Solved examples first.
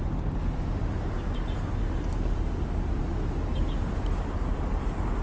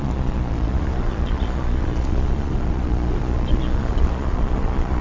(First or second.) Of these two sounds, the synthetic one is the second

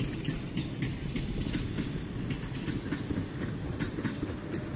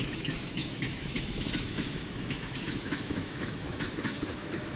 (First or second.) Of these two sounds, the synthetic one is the second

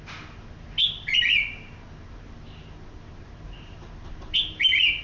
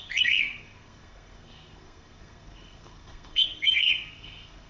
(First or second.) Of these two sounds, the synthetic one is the second